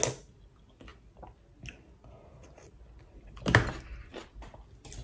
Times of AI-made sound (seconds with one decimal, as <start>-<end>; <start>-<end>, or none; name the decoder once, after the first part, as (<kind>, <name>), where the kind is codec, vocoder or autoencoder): none